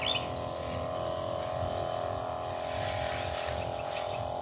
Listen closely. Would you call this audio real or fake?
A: real